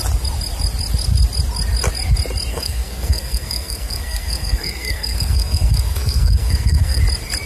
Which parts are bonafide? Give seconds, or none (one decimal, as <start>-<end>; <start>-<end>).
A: 0.0-2.5; 7.0-7.5